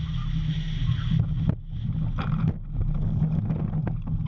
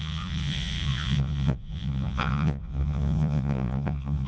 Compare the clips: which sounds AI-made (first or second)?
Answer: second